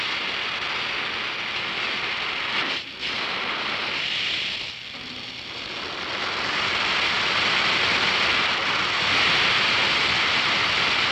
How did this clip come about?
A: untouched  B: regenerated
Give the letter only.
A